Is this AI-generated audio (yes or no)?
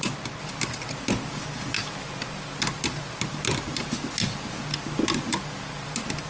no